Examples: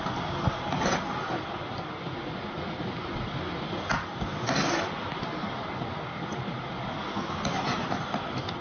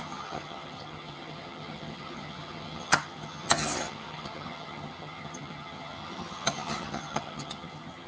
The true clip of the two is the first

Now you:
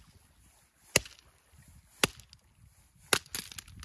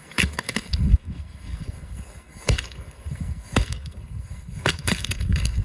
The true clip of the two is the first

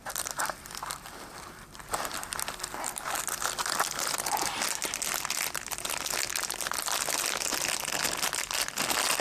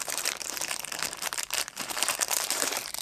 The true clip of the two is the first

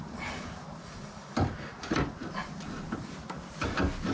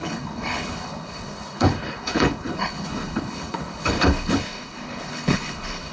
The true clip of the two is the first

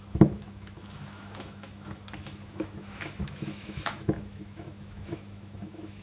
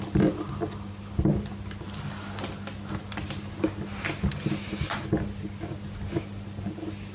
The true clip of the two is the second